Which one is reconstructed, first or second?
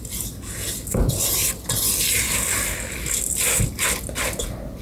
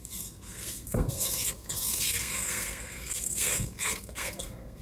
second